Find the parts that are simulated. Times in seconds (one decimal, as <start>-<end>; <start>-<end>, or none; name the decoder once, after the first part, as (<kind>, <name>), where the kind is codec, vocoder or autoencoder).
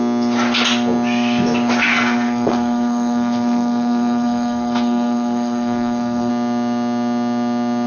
1.9-6.3 (codec, SNAC)